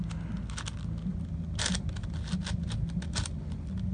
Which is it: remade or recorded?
recorded